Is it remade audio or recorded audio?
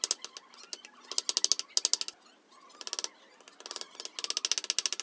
recorded